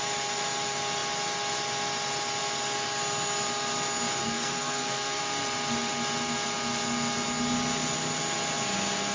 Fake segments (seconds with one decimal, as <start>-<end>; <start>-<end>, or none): 4.2-5.2